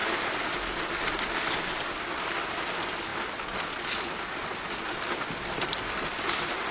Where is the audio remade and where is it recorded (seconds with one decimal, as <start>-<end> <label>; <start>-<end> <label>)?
0.0-6.7 recorded